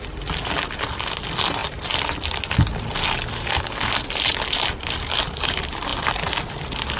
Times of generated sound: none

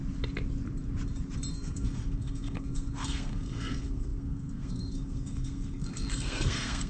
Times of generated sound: 1.5-6.9 (codec, SNAC)